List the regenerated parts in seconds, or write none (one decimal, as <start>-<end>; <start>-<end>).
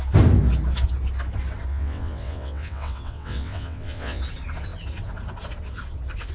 1.7-4.2